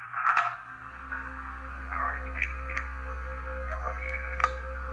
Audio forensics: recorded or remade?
remade